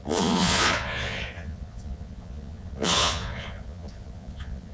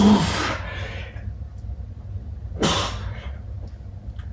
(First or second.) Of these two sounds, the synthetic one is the first